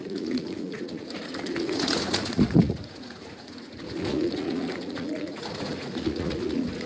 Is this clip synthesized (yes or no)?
yes